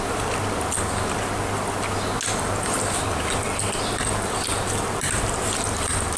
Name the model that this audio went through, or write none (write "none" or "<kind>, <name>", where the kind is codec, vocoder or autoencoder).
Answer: none